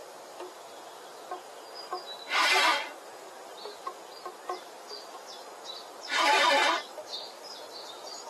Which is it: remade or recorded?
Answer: recorded